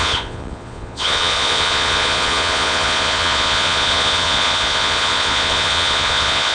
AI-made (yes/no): yes